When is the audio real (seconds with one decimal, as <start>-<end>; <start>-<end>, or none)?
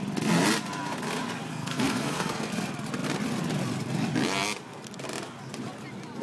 0.0-1.5; 2.5-6.2